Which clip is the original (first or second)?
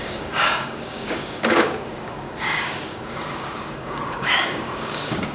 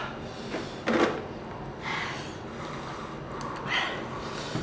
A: second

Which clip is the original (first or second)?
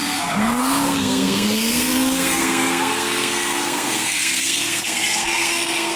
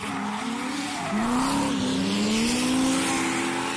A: second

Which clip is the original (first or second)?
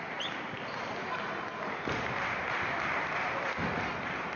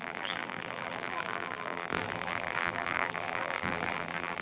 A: first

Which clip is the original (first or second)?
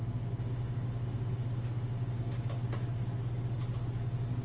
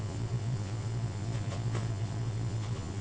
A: first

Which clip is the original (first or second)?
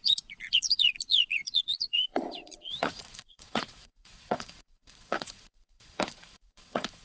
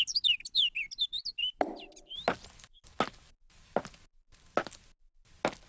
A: second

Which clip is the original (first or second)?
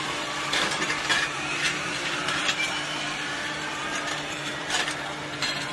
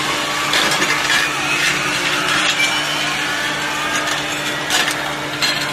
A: second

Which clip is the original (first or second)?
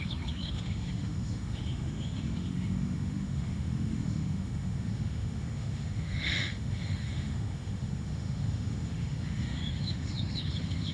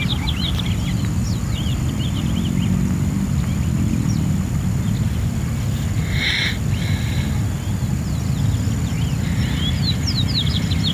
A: second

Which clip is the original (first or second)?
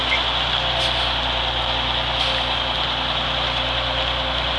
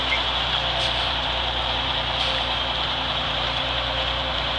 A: first